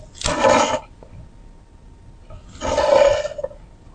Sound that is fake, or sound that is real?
real